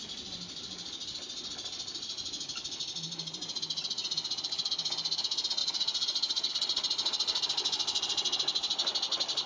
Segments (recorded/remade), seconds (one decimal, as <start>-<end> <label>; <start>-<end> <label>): 0.0-5.6 recorded; 5.6-6.5 remade; 6.5-9.5 recorded